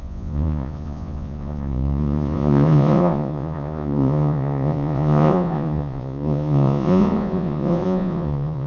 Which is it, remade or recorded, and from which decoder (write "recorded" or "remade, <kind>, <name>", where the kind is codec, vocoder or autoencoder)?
remade, vocoder, Vocos